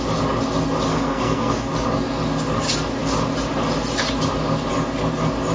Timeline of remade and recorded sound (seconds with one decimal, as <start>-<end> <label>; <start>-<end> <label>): 0.0-0.9 recorded; 0.9-1.7 remade; 1.7-5.5 recorded